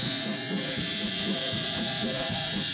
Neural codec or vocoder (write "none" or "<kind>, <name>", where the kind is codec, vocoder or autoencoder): vocoder, Vocos